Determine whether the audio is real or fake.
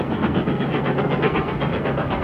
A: fake